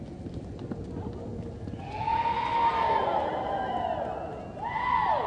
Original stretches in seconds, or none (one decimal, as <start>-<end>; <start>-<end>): 0.0-5.3